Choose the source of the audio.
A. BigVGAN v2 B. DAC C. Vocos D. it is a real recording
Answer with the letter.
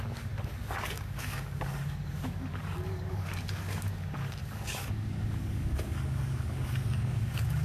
B